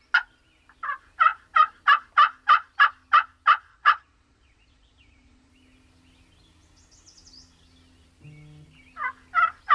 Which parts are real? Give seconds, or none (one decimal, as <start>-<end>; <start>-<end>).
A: 0.0-3.7; 5.5-9.7

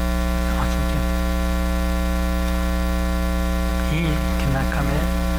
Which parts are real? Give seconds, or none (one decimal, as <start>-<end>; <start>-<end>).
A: 0.0-4.3

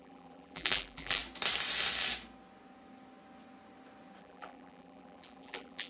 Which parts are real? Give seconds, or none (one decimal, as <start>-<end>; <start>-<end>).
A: 1.2-4.2